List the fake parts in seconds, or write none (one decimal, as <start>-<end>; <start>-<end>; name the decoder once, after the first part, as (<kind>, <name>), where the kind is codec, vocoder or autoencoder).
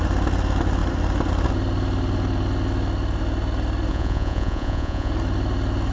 3.9-5.1 (vocoder, Vocos)